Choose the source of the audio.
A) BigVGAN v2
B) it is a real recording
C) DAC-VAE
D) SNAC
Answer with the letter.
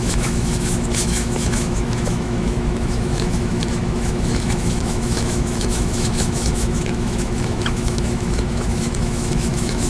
C